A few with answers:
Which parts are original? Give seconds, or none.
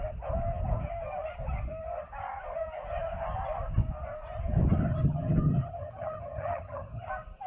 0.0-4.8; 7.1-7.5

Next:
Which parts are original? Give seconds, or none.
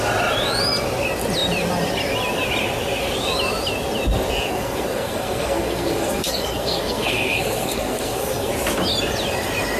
0.0-4.5; 8.5-9.8